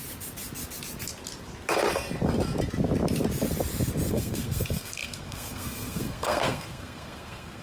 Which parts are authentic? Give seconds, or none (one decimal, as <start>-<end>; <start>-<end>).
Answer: 0.0-4.1